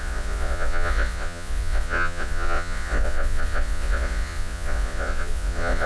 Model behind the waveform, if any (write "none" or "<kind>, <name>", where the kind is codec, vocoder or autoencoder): vocoder, Vocos